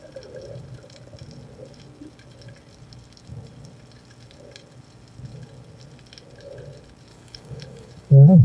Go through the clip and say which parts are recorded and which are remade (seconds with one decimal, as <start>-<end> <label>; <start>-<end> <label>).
0.0-7.1 recorded; 7.1-8.4 remade